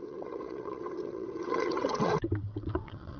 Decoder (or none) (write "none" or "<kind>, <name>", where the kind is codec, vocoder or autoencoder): vocoder, WaveNeXt